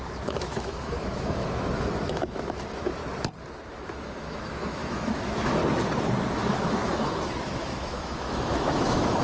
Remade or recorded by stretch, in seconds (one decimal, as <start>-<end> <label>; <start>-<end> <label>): 0.0-3.0 remade; 3.0-3.7 recorded; 3.7-5.6 remade; 5.6-6.3 recorded; 6.3-9.2 remade